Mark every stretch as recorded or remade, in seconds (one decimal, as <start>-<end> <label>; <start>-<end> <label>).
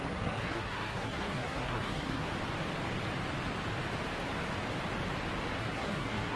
0.0-2.3 remade; 2.3-5.6 recorded; 5.6-6.4 remade